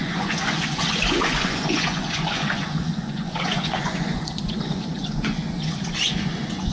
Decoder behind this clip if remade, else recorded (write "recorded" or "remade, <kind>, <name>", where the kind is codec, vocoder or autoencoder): remade, vocoder, Vocos